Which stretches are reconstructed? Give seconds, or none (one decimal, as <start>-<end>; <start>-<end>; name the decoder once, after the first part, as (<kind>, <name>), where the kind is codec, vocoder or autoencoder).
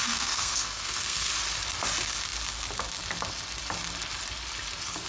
0.0-1.3 (codec, SNAC)